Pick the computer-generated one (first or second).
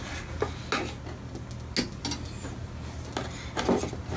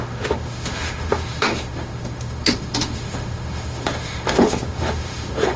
second